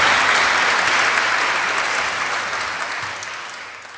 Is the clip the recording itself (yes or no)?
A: yes